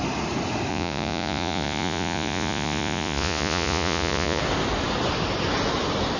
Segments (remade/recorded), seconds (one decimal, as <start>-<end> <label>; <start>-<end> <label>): 0.0-0.7 recorded; 0.7-4.4 remade; 4.4-6.2 recorded